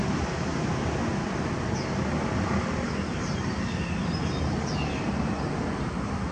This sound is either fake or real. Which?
real